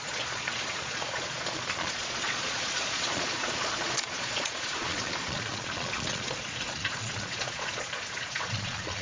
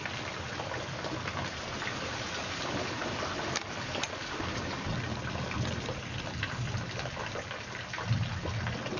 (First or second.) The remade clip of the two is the first